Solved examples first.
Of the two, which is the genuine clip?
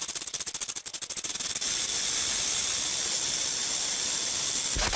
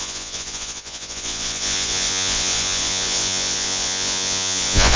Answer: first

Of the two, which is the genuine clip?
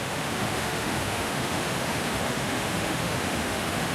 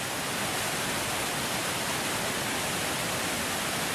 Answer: second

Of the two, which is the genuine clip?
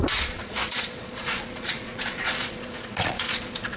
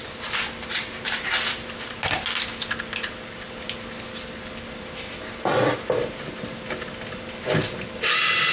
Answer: second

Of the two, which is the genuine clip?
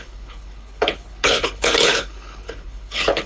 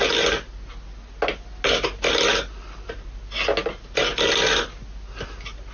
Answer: second